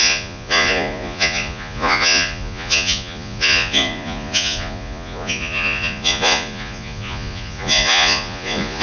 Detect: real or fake fake